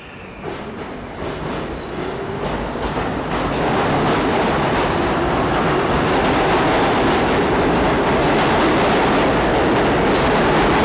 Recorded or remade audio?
recorded